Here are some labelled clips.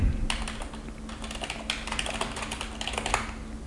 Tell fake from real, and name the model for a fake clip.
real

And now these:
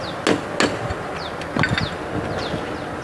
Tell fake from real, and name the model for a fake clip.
real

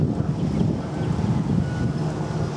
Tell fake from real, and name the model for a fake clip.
real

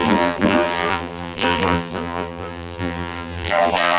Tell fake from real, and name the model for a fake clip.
fake, vocoder, BigVGAN v2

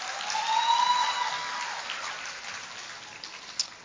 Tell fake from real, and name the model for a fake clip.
real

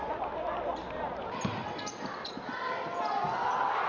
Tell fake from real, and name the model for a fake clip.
real